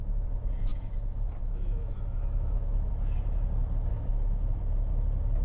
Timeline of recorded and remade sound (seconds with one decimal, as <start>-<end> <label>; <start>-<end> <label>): 0.0-0.7 recorded; 0.7-2.9 remade; 2.9-3.9 recorded; 3.9-4.6 remade; 4.6-5.4 recorded